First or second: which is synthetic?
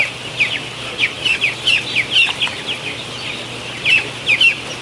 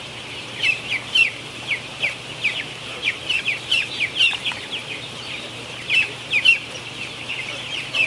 second